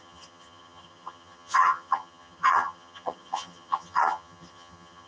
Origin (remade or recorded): remade